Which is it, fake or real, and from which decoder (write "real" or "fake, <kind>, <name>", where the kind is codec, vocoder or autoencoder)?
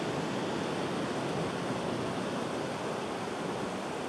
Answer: real